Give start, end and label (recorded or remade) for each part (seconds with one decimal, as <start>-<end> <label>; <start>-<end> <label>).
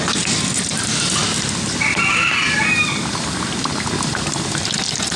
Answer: 0.0-5.2 recorded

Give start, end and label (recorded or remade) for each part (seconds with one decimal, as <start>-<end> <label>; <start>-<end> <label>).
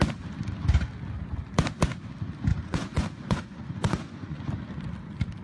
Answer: 0.0-2.5 recorded; 2.5-4.5 remade; 4.5-5.4 recorded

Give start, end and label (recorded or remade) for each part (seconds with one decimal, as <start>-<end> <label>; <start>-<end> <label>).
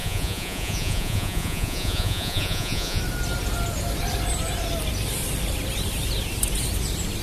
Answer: 0.0-3.0 remade; 3.0-7.2 recorded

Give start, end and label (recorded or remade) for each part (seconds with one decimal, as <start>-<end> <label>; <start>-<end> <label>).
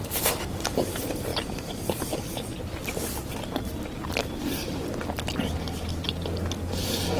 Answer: 0.0-7.2 recorded